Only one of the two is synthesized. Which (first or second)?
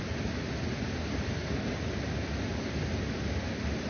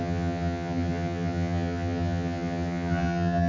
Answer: second